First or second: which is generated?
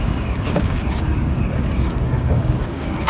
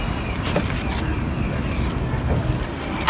first